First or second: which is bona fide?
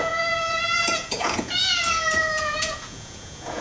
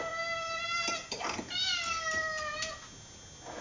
second